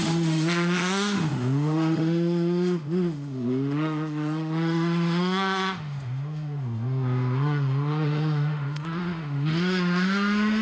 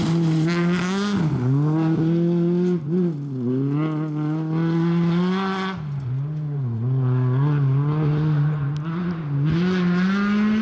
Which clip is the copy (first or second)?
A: first